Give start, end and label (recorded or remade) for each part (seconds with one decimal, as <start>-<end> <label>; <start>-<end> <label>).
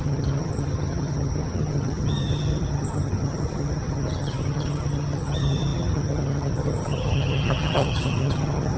0.0-8.8 remade